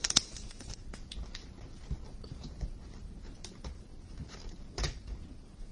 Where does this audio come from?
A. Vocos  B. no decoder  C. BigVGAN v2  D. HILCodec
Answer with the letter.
C